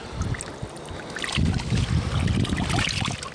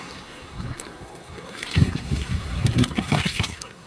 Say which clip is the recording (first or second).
first